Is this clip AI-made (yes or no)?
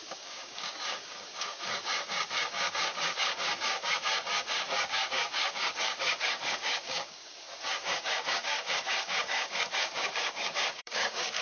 yes